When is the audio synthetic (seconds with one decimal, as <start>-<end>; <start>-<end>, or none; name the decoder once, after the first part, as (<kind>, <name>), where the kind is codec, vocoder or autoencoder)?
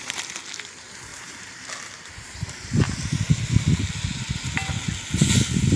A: 1.1-3.3 (vocoder, BigVGAN v2)